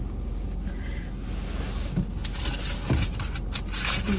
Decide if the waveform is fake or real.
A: real